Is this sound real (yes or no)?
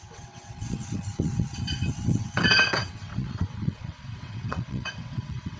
no